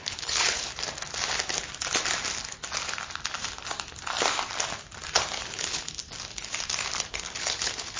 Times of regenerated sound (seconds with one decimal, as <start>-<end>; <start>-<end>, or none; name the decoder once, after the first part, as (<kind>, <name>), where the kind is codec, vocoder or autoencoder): 0.0-0.7 (codec, HILCodec); 5.5-6.0; 7.1-8.0